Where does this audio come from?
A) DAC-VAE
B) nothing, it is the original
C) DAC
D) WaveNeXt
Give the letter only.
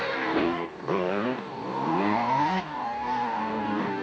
C